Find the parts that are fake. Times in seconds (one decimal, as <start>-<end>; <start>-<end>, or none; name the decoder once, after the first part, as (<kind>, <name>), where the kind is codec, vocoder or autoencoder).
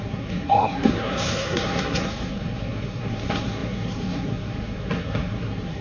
0.0-5.8 (codec, SNAC)